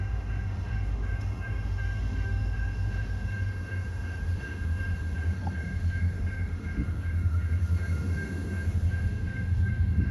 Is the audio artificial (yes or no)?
yes